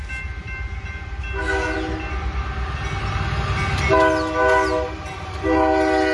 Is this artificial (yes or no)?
no